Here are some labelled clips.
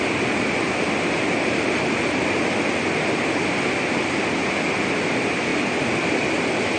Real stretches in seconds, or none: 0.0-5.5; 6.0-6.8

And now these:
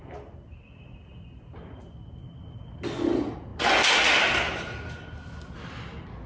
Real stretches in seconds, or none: 0.0-6.3

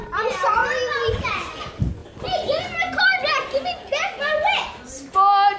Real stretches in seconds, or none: 0.0-5.6

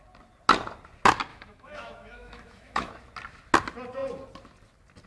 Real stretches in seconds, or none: 0.0-1.3; 2.9-5.1

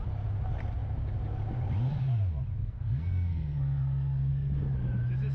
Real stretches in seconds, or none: 0.0-2.6; 4.3-5.3

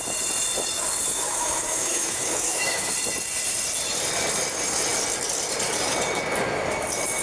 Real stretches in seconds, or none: 0.0-1.1; 2.9-7.2

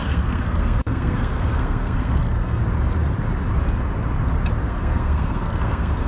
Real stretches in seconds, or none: 2.6-4.6